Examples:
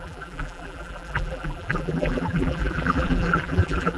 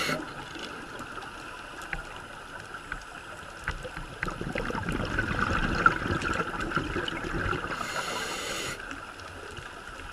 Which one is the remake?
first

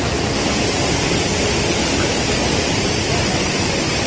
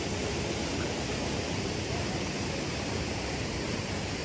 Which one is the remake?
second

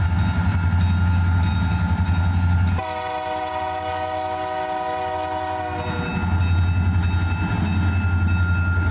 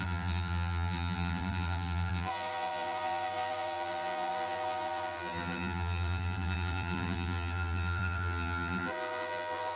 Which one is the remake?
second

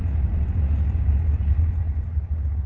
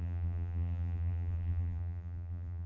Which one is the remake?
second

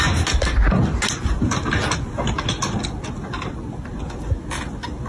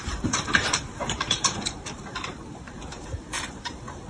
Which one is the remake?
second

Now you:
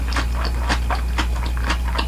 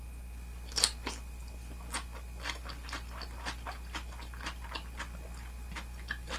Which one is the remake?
first